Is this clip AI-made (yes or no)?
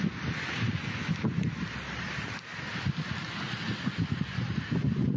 no